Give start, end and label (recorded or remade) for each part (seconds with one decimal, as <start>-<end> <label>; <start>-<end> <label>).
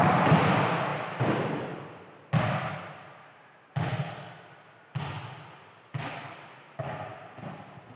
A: 0.0-0.9 recorded; 0.9-2.8 remade; 2.8-3.9 recorded; 3.9-5.0 remade; 5.0-8.0 recorded